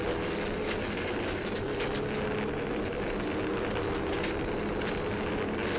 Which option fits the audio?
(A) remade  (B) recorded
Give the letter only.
B